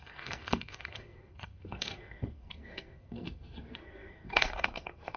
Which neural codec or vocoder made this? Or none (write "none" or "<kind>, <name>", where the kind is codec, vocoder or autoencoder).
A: codec, SNAC